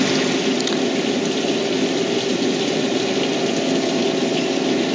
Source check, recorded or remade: recorded